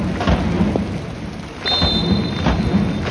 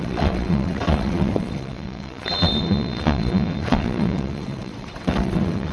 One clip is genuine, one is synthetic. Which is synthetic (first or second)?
second